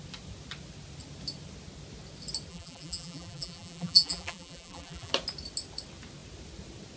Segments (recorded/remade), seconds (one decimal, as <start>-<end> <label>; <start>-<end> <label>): 0.0-2.5 recorded; 2.5-5.1 remade; 5.1-7.0 recorded

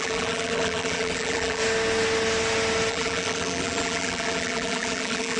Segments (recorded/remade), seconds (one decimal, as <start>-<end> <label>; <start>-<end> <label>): 0.0-1.6 remade; 1.6-2.9 recorded; 2.9-5.4 remade

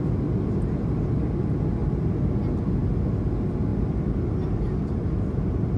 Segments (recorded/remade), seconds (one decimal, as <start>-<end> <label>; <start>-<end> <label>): 0.0-5.8 recorded

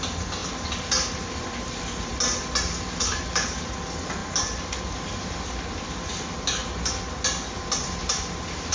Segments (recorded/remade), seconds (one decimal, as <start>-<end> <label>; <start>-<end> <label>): 0.0-8.7 recorded

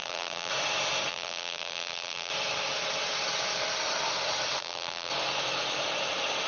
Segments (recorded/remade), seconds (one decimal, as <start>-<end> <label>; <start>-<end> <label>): 0.0-0.5 remade; 0.5-1.1 recorded; 1.1-2.3 remade; 2.3-4.6 recorded; 4.6-5.1 remade; 5.1-6.5 recorded

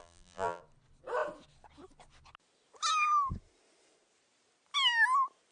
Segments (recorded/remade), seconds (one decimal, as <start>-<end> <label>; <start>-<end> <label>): 0.0-0.6 remade; 0.6-5.5 recorded

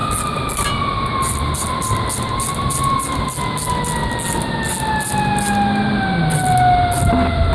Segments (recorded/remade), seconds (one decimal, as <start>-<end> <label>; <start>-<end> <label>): 0.0-7.5 recorded